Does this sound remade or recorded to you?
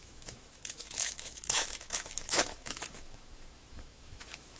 remade